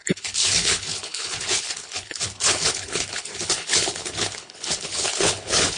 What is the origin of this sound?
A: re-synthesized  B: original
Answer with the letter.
A